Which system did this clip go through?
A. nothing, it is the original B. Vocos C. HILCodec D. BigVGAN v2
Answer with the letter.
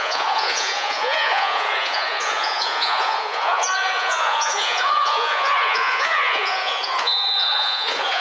B